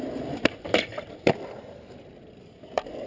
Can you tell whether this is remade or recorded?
remade